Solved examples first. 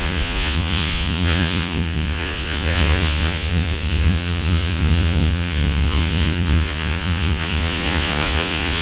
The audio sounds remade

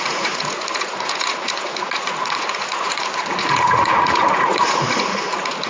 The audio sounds remade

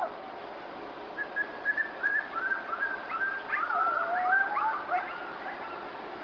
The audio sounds recorded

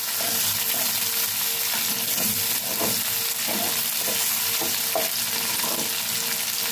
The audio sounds recorded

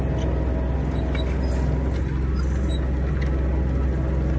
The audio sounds recorded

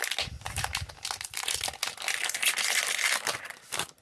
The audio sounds recorded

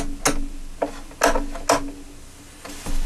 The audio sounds recorded